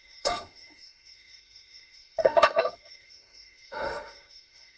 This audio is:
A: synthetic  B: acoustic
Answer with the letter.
A